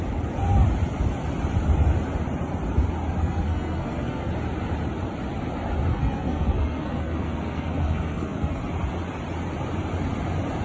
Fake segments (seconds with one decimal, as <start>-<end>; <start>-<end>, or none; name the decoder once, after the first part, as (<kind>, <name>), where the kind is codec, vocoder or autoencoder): 3.2-4.3 (codec, SNAC); 5.9-8.6